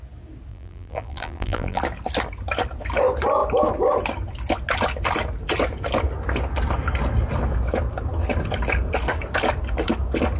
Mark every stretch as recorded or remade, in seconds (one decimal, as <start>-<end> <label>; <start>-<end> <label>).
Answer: 0.0-0.5 recorded; 0.5-1.8 remade; 1.8-10.4 recorded